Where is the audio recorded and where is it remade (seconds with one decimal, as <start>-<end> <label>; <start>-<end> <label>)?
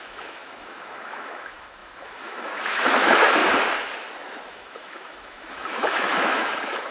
0.0-3.4 remade; 3.4-4.5 recorded; 4.5-6.9 remade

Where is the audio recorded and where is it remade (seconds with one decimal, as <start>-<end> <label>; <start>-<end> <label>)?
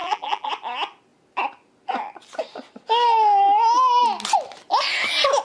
0.0-0.5 remade; 0.5-5.4 recorded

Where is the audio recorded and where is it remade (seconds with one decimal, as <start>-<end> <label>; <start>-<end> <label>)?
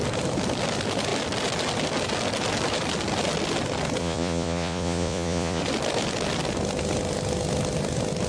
0.0-4.0 recorded; 4.0-5.6 remade; 5.6-8.3 recorded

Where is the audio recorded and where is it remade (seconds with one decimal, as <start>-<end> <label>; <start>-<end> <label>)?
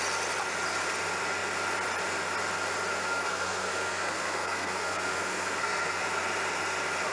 0.0-2.9 recorded; 2.9-6.0 remade; 6.0-7.1 recorded